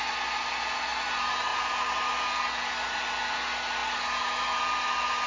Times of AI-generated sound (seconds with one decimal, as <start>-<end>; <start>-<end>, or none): 1.5-2.1